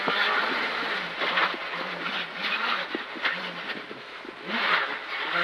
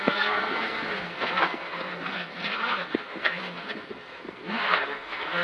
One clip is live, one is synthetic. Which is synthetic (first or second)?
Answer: second